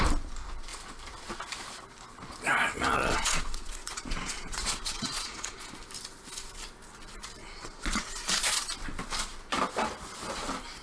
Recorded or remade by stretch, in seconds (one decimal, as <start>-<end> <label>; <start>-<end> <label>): 0.0-2.9 recorded; 2.9-5.6 remade; 5.6-7.4 recorded; 7.4-8.7 remade; 8.7-10.8 recorded

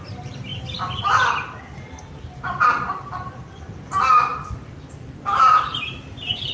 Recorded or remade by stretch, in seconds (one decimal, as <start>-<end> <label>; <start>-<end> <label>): 0.0-6.5 recorded